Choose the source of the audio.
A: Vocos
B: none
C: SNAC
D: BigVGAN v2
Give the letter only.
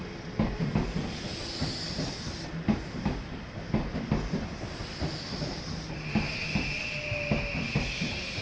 B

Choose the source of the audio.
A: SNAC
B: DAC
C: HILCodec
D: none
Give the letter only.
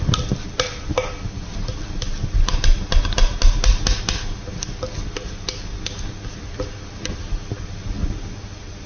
D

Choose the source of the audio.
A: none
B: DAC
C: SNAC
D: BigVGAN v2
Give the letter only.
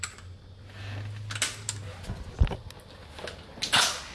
A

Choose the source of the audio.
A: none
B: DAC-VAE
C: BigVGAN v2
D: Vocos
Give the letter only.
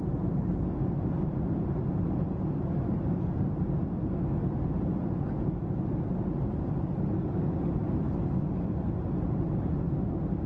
A